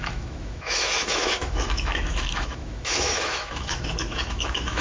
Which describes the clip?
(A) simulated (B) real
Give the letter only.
A